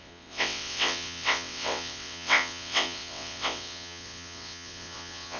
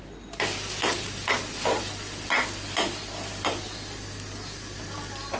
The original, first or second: second